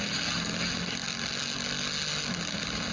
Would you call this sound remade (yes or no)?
no